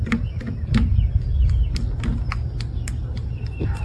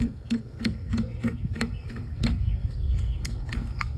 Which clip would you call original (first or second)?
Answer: first